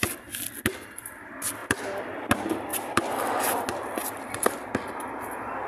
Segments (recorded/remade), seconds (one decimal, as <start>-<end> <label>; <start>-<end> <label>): 0.0-1.6 recorded; 1.6-2.1 remade; 2.1-2.7 recorded; 2.7-3.3 remade; 3.3-4.0 recorded; 4.0-5.2 remade; 5.2-5.7 recorded